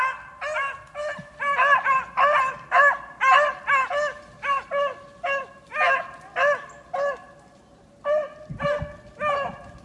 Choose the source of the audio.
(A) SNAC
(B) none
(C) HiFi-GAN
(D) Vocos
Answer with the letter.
B